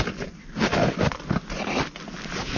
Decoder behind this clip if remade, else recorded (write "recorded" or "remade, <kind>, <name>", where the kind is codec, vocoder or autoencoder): recorded